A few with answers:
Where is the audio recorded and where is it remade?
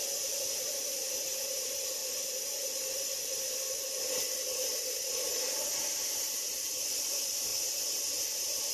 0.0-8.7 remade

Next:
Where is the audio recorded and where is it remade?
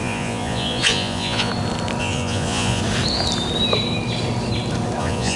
0.0-1.5 remade; 1.5-2.0 recorded; 2.0-2.8 remade; 2.8-5.0 recorded; 5.0-5.4 remade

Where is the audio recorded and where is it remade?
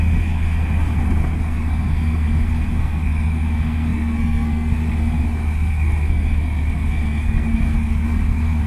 0.0-8.7 remade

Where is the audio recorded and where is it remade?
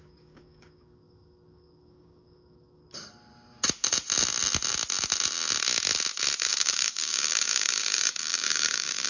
0.0-2.8 remade; 2.8-6.4 recorded; 6.4-9.1 remade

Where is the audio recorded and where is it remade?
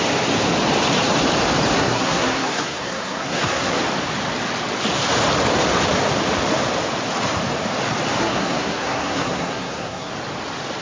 0.0-1.7 recorded; 1.7-3.8 remade; 3.8-8.2 recorded; 8.2-10.1 remade; 10.1-10.8 recorded